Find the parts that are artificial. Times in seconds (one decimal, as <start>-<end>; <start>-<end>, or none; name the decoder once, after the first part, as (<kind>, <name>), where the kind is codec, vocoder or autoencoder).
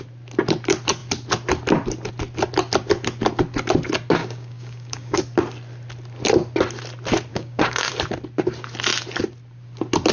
4.2-5.2 (codec, DAC); 7.3-7.9